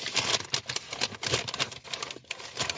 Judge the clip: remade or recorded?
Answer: recorded